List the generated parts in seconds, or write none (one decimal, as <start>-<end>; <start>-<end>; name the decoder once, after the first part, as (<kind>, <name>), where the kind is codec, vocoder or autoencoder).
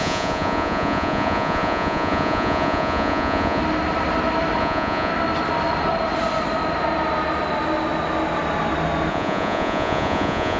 0.0-3.6 (vocoder, Vocos); 4.6-5.1; 9.1-10.6